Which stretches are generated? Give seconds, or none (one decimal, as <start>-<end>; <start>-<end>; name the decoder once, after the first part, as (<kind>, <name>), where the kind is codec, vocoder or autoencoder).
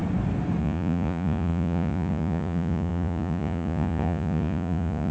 0.6-5.1 (vocoder, Vocos)